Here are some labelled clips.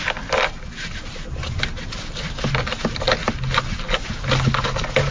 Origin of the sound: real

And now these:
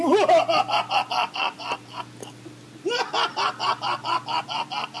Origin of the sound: real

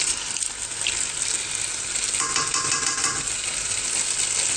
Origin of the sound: real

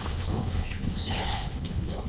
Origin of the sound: fake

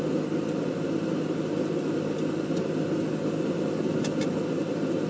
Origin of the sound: real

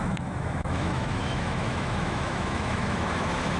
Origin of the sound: fake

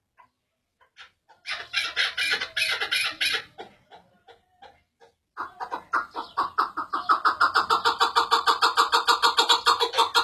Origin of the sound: real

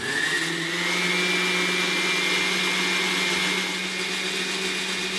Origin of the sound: real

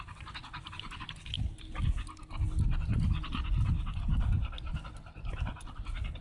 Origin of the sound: real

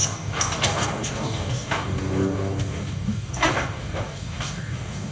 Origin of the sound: fake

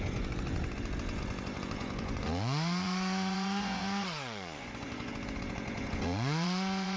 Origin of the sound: fake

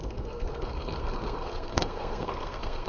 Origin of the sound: fake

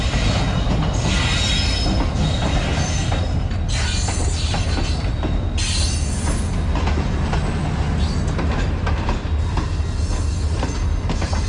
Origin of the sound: real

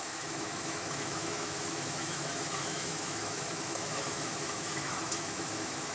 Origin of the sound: fake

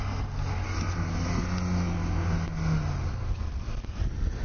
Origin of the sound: real